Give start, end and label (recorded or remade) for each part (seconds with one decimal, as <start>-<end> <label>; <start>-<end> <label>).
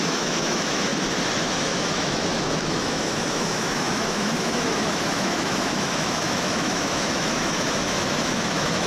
0.0-0.9 remade; 0.9-1.4 recorded; 1.4-8.9 remade